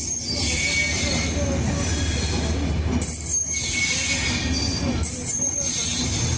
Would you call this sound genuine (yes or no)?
yes